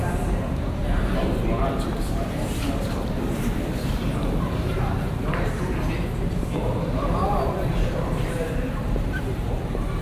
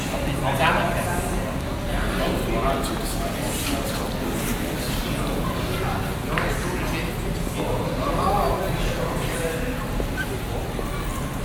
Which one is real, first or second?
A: second